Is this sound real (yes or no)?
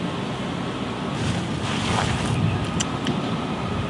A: yes